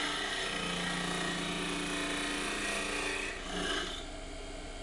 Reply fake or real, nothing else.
real